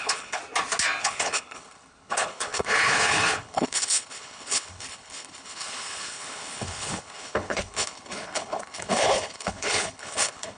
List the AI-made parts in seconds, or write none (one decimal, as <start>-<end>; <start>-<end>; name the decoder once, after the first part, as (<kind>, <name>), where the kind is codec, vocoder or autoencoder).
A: 0.0-0.4 (codec, HILCodec); 1.0-10.6